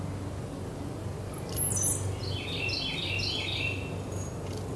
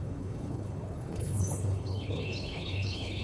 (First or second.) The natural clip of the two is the first